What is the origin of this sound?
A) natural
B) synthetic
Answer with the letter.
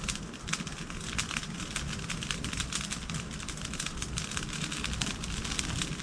A